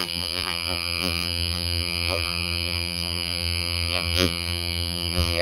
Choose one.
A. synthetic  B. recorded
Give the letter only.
A